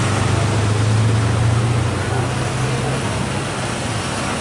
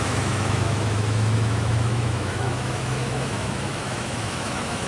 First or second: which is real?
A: first